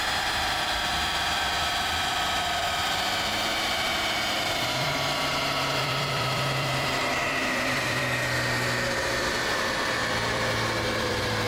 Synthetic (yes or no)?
yes